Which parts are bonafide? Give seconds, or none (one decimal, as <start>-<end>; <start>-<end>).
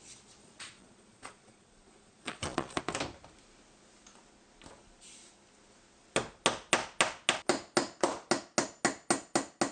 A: 0.0-0.4; 2.8-9.7